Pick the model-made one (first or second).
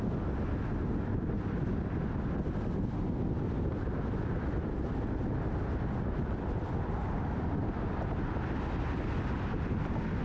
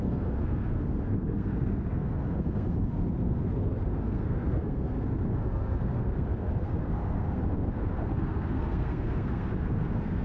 second